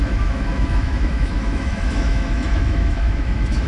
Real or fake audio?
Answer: fake